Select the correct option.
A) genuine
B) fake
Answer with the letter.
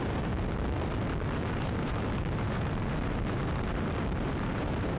B